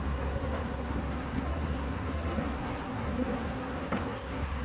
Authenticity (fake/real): fake